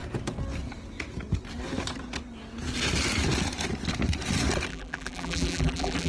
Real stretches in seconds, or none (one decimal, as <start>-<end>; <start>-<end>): 0.0-4.7